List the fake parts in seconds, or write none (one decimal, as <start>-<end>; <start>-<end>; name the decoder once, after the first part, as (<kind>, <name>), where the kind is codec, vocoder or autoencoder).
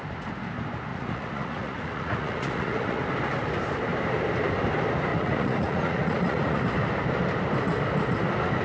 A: 0.9-3.0 (vocoder, Vocos); 5.1-6.6